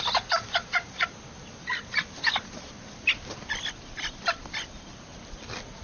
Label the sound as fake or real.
real